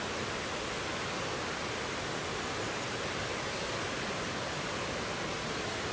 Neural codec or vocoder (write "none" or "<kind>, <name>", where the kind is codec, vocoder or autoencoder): none